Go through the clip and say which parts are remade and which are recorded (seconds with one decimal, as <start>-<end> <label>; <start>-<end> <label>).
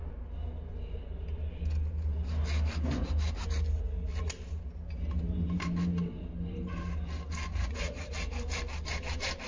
0.0-7.5 recorded; 7.5-8.1 remade; 8.1-9.5 recorded